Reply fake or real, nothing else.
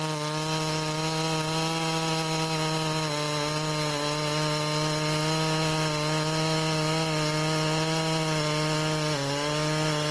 real